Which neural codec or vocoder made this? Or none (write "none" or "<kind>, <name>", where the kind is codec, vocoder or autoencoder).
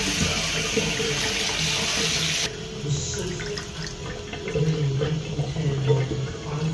none